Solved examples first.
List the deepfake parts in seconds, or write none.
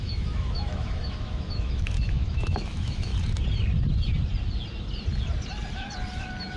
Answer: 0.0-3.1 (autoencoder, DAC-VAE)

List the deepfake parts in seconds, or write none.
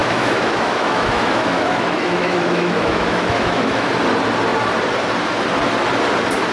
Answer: 0.0-3.9 (autoencoder, DAC-VAE)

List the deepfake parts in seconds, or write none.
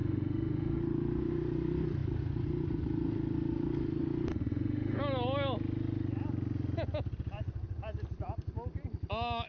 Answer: 0.0-0.8 (autoencoder, DAC-VAE); 4.3-5.0